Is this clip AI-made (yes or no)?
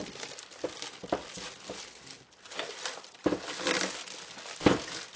no